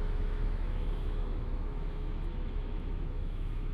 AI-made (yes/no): yes